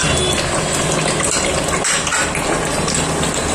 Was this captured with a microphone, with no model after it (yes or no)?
yes